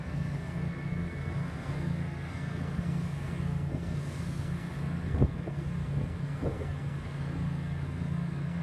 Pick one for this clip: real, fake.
fake